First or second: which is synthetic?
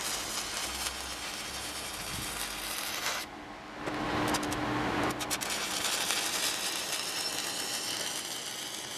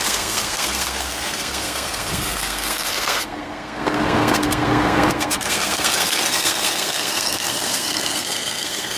second